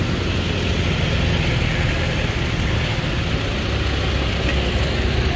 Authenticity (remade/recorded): recorded